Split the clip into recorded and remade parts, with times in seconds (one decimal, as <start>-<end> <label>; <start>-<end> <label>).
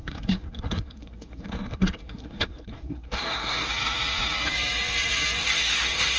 0.0-3.7 remade; 3.7-5.4 recorded; 5.4-6.2 remade